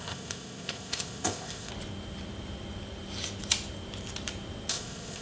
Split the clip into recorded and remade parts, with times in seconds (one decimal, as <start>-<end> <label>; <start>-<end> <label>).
0.0-1.7 remade; 1.7-4.7 recorded; 4.7-5.2 remade